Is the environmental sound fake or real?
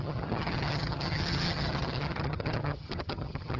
fake